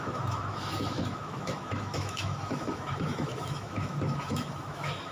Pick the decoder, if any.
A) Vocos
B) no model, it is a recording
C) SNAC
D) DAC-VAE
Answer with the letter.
D